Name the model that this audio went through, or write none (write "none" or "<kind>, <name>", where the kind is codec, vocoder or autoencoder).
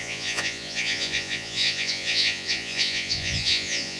vocoder, Vocos